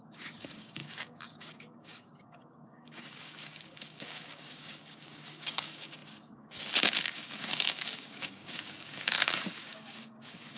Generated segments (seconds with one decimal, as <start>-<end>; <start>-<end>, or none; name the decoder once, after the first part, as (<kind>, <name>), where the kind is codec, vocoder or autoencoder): 0.0-10.6 (codec, DAC)